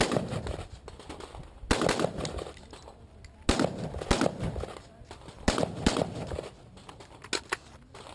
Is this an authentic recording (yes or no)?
yes